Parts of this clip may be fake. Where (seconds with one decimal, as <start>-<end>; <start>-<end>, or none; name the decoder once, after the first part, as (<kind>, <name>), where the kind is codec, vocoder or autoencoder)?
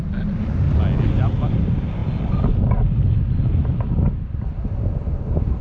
none